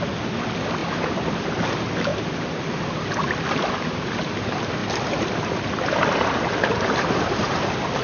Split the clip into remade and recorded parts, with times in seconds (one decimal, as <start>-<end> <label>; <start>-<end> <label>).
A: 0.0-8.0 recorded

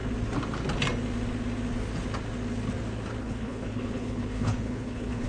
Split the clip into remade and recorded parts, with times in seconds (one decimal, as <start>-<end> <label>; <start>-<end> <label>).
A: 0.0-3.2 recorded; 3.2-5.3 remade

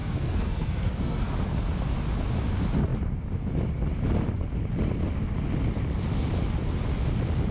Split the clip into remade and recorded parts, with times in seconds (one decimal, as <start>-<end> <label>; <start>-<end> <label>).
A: 0.0-1.3 remade; 1.3-7.5 recorded